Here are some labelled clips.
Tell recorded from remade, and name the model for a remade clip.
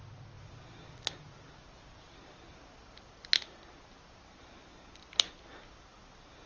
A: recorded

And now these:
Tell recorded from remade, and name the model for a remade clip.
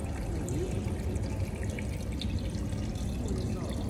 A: recorded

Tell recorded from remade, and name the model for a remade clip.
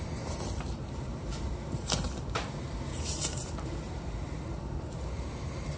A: remade, vocoder, BigVGAN v2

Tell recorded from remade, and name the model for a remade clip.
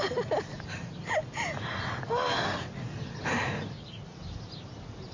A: recorded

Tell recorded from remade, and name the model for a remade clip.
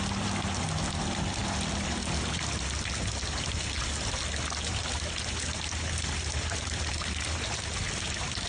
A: recorded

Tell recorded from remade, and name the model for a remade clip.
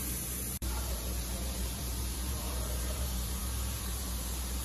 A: remade, vocoder, BigVGAN v2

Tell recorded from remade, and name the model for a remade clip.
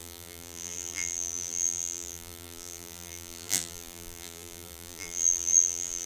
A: remade, vocoder, BigVGAN v2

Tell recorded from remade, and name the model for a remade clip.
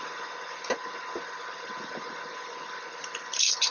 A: recorded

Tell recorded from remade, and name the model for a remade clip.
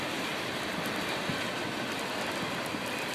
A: remade, vocoder, BigVGAN v2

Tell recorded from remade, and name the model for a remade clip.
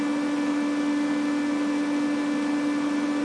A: recorded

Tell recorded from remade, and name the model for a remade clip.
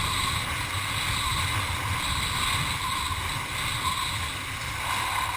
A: recorded